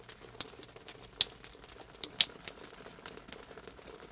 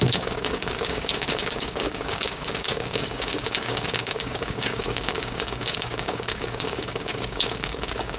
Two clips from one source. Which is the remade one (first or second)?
second